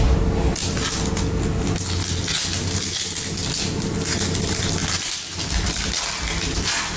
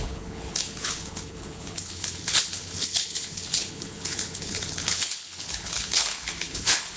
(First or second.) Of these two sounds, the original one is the first